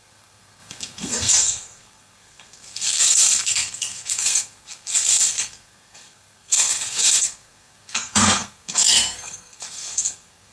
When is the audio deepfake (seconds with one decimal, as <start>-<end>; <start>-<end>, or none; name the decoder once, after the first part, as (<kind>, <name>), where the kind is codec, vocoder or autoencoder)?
0.0-10.5 (codec, SNAC)